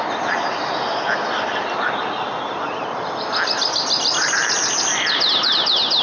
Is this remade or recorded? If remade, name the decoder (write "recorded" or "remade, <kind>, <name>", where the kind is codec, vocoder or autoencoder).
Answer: recorded